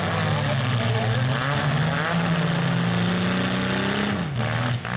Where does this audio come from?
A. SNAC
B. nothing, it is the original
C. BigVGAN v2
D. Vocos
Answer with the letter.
B